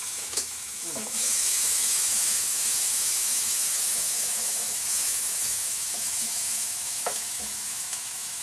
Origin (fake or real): fake